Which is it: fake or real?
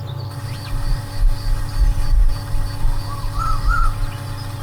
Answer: real